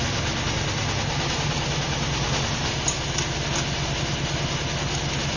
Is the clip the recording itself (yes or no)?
yes